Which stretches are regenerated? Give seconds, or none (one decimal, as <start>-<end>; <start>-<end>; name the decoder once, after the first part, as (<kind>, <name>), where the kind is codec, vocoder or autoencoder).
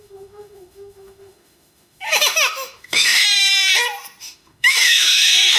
0.0-3.7 (autoencoder, DAC-VAE); 4.2-5.6